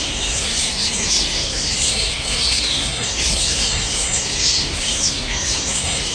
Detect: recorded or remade remade